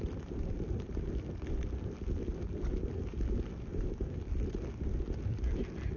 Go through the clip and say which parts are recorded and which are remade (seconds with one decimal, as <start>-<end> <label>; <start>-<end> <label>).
0.0-3.7 recorded; 3.7-4.2 remade; 4.2-6.0 recorded

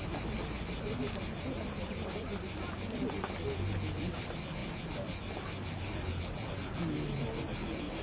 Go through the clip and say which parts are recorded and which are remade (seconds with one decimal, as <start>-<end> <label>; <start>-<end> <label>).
0.0-8.0 recorded

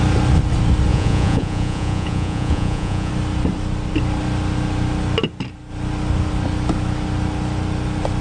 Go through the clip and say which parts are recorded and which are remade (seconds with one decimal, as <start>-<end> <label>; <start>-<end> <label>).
0.0-0.9 recorded; 0.9-3.1 remade; 3.1-8.2 recorded

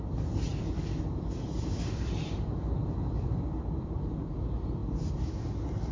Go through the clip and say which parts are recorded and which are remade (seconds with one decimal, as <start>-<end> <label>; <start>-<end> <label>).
0.0-0.5 recorded; 0.5-4.0 remade; 4.0-4.8 recorded; 4.8-5.3 remade; 5.3-5.9 recorded